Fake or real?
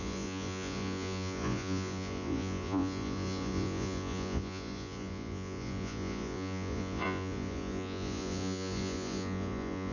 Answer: fake